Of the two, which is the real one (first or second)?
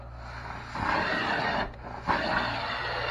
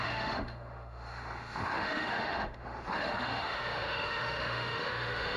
first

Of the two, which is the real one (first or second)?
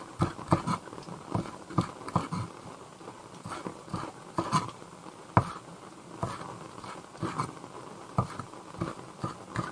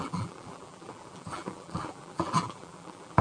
first